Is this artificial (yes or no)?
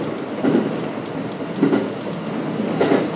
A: no